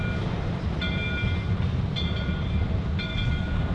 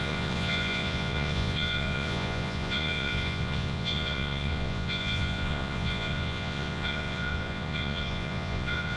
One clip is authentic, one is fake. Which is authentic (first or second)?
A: first